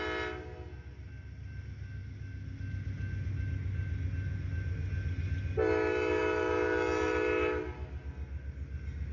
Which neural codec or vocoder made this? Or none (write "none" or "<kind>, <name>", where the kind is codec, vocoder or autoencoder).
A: none